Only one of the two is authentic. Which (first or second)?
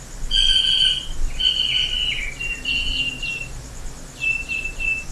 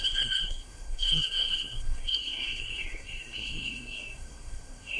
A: first